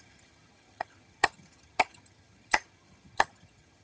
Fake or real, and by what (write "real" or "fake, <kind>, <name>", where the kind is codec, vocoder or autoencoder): fake, vocoder, HiFi-GAN